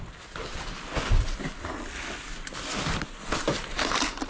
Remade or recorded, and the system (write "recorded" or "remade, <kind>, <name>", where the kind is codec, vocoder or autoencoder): recorded